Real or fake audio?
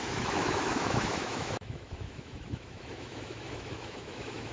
fake